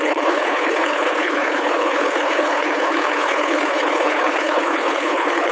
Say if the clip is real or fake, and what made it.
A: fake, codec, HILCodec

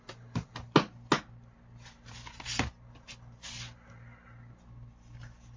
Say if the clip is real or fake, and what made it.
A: real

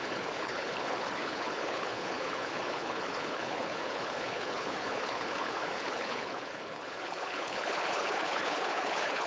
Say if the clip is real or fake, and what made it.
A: fake, codec, HILCodec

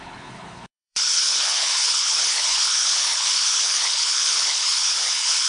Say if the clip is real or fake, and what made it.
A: fake, codec, HILCodec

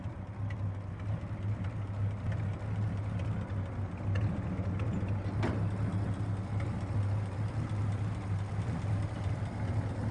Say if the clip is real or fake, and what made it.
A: real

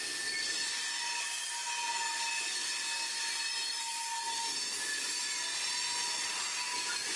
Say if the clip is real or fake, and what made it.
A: real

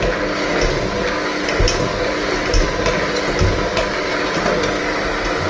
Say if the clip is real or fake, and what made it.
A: real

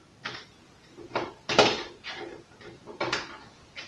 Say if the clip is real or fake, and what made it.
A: real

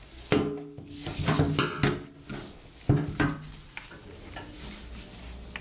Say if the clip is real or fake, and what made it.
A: real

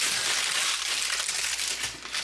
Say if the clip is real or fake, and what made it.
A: real